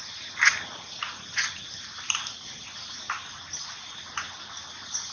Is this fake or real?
real